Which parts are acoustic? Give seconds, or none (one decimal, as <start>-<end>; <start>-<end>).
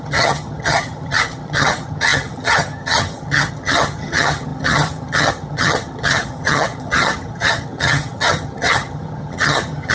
none